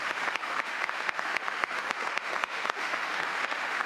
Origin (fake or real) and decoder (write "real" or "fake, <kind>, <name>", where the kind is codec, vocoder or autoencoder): fake, autoencoder, DAC-VAE